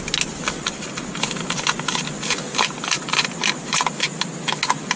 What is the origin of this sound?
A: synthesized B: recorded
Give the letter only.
B